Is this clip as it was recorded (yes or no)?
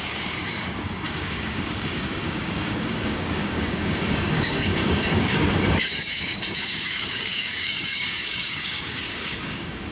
no